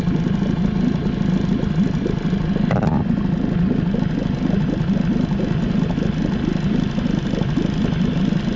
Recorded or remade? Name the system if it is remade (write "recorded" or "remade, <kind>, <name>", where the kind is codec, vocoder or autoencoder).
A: recorded